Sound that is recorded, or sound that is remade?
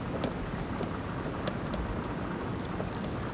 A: recorded